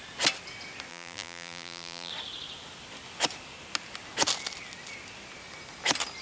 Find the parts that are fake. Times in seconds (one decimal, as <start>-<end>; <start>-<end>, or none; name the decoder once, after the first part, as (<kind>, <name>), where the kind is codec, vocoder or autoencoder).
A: 0.9-2.1 (vocoder, BigVGAN v2)